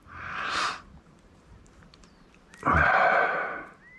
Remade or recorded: remade